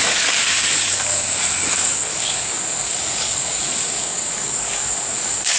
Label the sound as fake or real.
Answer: fake